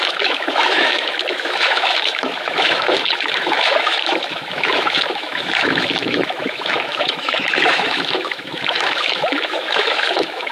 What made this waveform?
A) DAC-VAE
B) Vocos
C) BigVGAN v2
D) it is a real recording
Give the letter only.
A